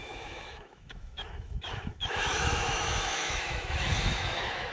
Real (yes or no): no